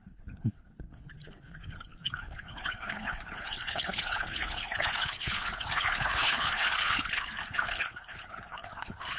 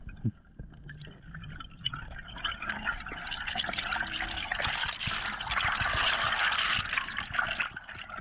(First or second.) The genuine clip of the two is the second